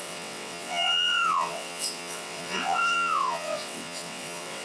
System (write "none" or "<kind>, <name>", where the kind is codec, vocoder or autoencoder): vocoder, WaveNeXt